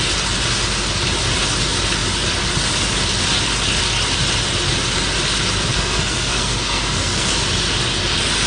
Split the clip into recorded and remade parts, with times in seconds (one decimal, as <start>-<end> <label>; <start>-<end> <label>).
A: 0.0-5.7 recorded; 5.7-7.3 remade; 7.3-8.5 recorded